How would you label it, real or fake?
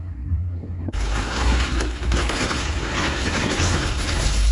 fake